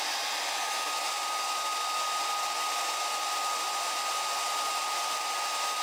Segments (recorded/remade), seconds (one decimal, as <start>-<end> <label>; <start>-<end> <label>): 0.0-5.8 recorded